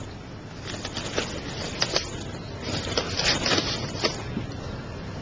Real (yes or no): no